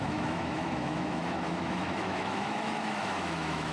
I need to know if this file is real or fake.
fake